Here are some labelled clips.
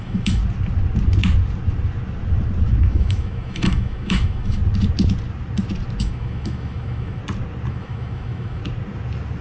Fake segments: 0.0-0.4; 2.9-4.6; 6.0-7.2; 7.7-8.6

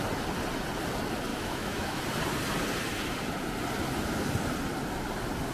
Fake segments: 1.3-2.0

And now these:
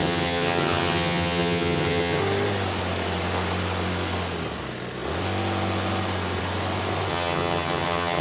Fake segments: 0.0-2.2; 7.1-8.2